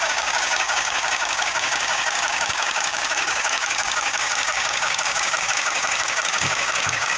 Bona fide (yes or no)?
no